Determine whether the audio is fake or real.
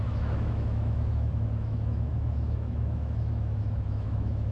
fake